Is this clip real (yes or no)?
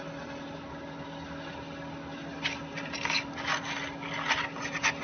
yes